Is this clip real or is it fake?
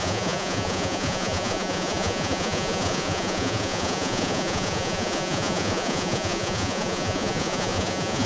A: fake